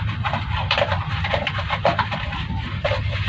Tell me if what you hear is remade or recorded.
remade